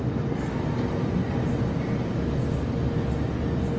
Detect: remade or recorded recorded